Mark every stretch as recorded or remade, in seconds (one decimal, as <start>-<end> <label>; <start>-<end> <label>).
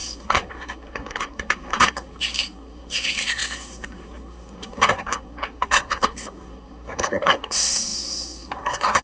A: 0.0-9.0 remade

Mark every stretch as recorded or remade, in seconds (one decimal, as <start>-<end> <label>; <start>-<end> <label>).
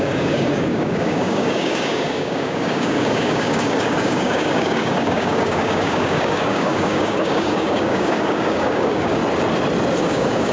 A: 0.0-9.2 remade; 9.2-10.0 recorded; 10.0-10.5 remade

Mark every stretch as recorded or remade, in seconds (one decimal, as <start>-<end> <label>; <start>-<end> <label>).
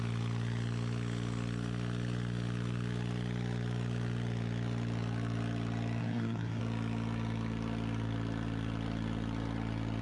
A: 0.0-6.0 recorded; 6.0-6.6 remade; 6.6-10.0 recorded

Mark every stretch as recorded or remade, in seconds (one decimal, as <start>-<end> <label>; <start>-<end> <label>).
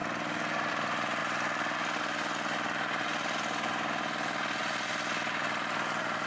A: 0.0-6.3 recorded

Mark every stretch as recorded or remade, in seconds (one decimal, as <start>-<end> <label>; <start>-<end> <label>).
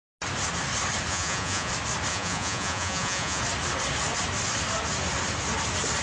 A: 0.0-1.1 recorded; 1.1-1.7 remade; 1.7-2.1 recorded; 2.1-3.4 remade; 3.4-6.0 recorded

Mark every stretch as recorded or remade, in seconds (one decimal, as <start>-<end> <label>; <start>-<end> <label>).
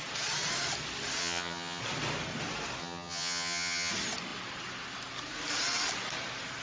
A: 0.0-1.2 recorded; 1.2-1.8 remade; 1.8-2.8 recorded; 2.8-3.9 remade; 3.9-6.6 recorded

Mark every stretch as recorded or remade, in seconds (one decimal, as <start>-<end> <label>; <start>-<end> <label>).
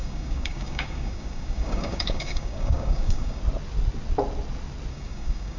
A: 0.0-3.4 remade; 3.4-4.9 recorded; 4.9-5.6 remade